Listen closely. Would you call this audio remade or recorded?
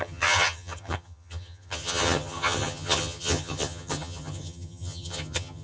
remade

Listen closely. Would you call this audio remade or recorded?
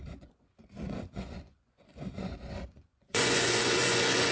remade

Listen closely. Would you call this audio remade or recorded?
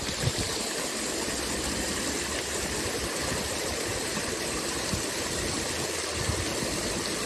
recorded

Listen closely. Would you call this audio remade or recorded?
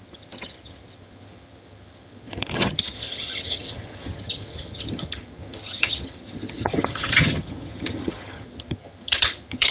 remade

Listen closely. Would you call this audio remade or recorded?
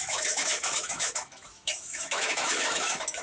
remade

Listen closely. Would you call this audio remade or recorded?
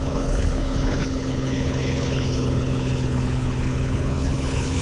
remade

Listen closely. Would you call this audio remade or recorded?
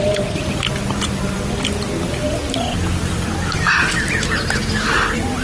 recorded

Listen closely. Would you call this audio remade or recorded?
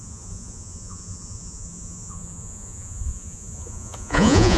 remade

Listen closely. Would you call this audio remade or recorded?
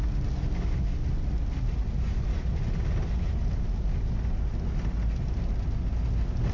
recorded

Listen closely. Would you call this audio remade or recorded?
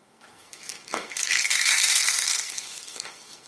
remade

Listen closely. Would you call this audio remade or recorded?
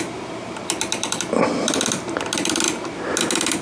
recorded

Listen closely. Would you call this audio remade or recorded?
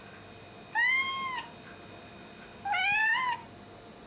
recorded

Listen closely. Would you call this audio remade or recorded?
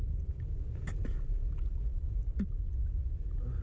recorded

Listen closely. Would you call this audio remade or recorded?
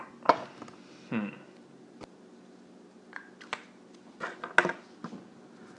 recorded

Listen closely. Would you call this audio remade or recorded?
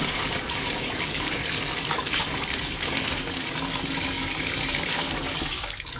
remade